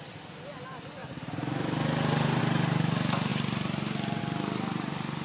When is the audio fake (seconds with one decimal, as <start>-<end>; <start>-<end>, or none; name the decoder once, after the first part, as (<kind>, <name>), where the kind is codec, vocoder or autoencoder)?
none